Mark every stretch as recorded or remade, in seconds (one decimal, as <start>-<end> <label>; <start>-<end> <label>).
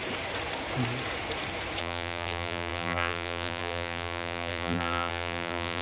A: 0.0-1.8 recorded; 1.8-5.8 remade